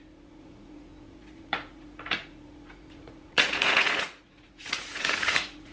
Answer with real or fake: fake